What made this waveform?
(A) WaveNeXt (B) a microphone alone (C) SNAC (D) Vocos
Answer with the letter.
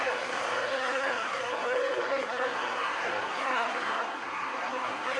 C